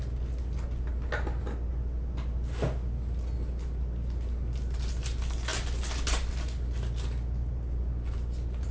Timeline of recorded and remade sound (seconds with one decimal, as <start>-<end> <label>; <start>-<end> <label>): 0.0-8.7 recorded